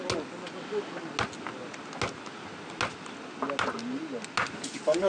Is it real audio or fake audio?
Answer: real